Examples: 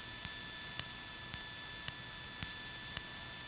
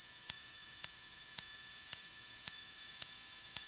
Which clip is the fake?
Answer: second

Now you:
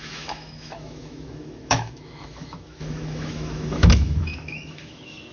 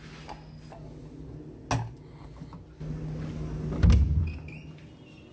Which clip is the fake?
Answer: first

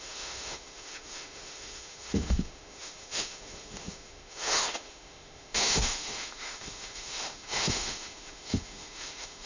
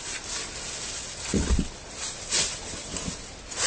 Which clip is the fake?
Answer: first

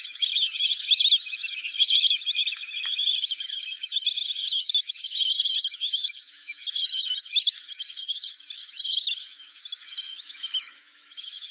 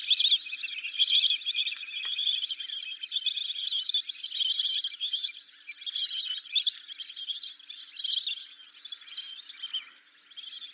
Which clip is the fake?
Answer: first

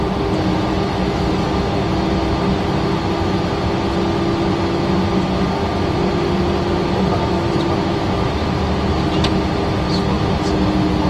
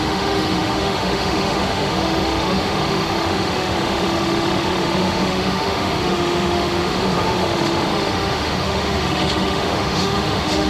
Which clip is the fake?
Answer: second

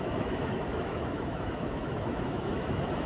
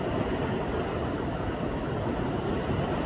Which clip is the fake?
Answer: first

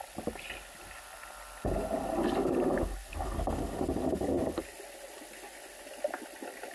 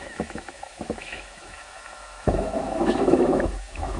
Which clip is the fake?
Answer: second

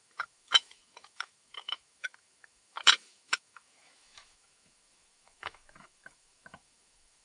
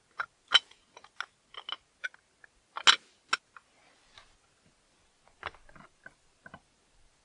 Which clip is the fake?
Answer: first